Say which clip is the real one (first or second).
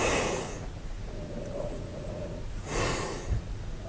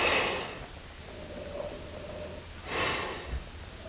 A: second